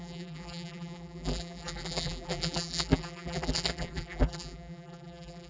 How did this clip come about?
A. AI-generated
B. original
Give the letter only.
A